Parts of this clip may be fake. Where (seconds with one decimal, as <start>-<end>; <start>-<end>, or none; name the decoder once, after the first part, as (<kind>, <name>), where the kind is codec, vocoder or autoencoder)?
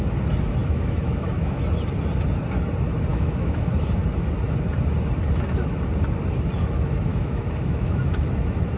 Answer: 0.6-1.6 (autoencoder, DAC-VAE); 3.1-3.7; 7.1-8.2